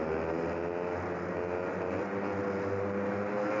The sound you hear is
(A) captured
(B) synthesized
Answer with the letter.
A